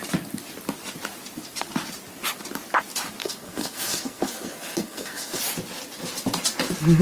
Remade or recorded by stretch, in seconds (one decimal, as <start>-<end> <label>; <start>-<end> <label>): 0.0-3.2 recorded; 3.2-5.4 remade; 5.4-7.0 recorded